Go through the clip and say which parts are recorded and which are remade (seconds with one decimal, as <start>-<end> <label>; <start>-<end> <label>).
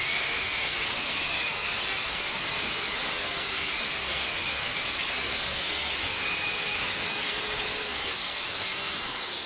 0.0-9.5 remade